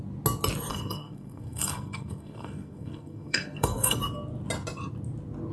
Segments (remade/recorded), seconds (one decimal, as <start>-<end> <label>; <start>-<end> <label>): 0.0-0.7 recorded; 0.7-4.0 remade; 4.0-5.5 recorded